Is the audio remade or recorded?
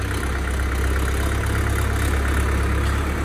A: recorded